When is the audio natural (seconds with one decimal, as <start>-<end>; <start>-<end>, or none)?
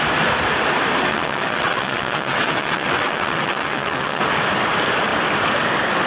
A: 0.0-1.1; 4.2-6.1